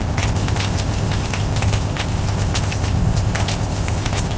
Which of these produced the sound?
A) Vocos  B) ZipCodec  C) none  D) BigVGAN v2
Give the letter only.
B